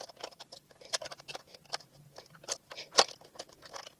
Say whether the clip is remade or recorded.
recorded